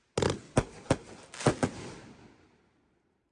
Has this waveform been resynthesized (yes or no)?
no